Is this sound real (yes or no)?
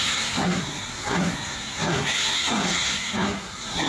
no